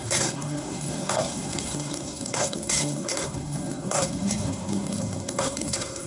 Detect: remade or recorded remade